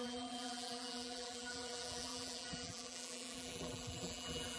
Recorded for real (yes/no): no